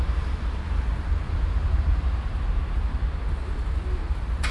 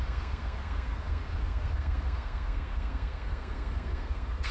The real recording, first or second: first